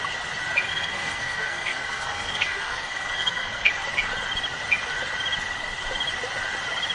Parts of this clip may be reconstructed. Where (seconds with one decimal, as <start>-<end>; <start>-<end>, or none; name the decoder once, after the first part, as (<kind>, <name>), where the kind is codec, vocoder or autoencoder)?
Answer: 0.7-3.7 (codec, SNAC)